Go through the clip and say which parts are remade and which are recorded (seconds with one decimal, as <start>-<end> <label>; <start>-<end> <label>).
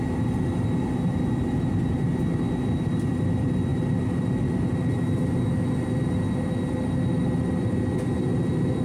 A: 0.0-8.8 recorded